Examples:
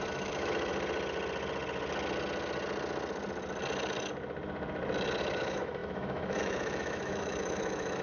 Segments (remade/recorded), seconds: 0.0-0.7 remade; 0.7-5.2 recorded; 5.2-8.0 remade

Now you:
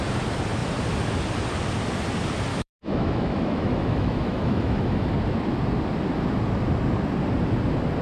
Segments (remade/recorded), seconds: 0.0-2.5 recorded; 2.5-5.1 remade; 5.1-8.0 recorded

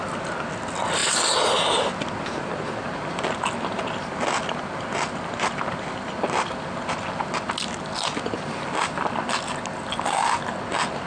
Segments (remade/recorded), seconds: 0.0-11.1 recorded

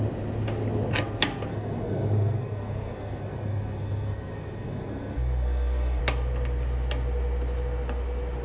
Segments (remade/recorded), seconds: 0.0-1.5 recorded; 1.5-6.0 remade; 6.0-8.4 recorded